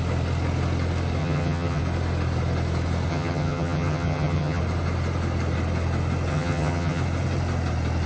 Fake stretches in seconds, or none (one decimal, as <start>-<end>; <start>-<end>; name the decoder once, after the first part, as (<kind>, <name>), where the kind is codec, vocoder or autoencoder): 1.2-1.8 (vocoder, HiFi-GAN); 3.1-4.6; 6.3-7.0